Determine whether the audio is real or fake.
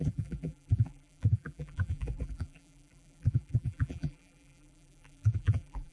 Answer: fake